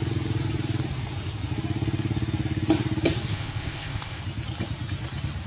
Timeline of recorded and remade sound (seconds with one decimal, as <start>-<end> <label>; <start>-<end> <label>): 0.0-3.3 recorded; 3.3-4.2 remade; 4.2-5.5 recorded